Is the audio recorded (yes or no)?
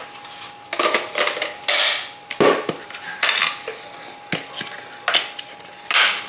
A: yes